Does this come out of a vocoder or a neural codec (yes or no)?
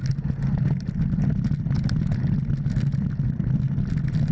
no